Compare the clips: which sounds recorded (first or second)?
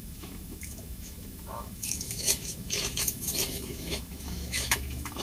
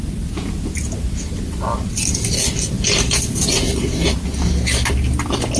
second